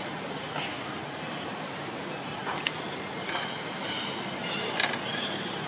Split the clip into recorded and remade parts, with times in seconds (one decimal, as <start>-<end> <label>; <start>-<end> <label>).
0.0-5.7 recorded

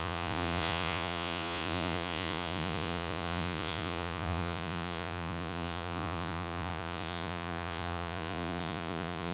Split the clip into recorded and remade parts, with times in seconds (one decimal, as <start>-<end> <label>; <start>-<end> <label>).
0.0-9.3 remade